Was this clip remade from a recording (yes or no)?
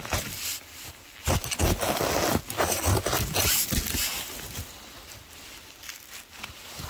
no